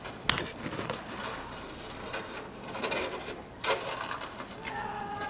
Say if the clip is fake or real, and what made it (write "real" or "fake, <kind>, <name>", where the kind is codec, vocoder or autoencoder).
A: real